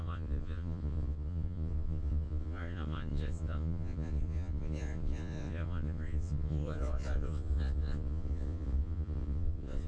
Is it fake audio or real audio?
fake